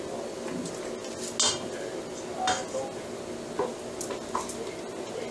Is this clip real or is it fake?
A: real